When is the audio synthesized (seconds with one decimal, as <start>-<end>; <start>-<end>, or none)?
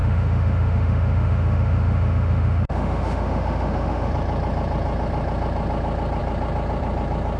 0.0-4.1